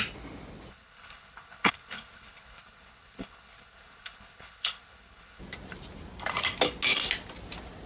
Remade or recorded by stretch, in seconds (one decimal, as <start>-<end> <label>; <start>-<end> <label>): 0.0-0.7 recorded; 0.7-5.4 remade; 5.4-7.9 recorded